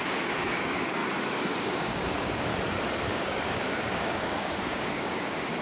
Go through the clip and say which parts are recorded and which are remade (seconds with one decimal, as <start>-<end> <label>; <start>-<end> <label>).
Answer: 0.0-1.0 remade; 1.0-1.6 recorded; 1.6-2.5 remade; 2.5-3.1 recorded; 3.1-5.6 remade